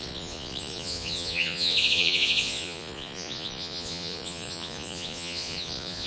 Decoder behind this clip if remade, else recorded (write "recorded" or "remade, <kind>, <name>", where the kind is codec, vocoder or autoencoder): remade, vocoder, Vocos